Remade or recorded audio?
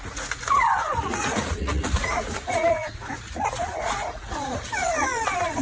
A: remade